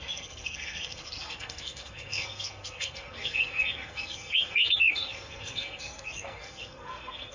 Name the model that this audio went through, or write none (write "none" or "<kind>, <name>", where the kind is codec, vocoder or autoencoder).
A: codec, SNAC